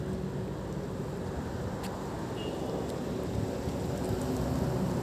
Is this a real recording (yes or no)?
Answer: yes